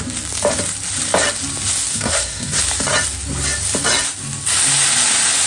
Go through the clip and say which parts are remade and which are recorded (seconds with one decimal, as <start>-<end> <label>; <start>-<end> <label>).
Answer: 0.0-1.9 recorded; 1.9-2.6 remade; 2.6-5.5 recorded